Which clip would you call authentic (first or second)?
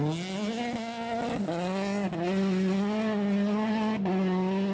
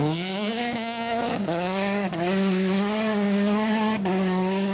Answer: first